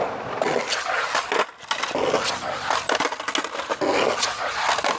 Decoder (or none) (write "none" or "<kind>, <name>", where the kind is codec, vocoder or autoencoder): none